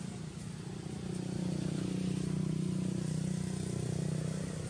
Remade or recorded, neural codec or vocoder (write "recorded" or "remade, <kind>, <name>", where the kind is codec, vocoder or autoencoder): recorded